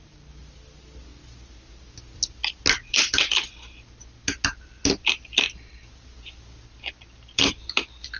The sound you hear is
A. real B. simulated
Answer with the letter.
A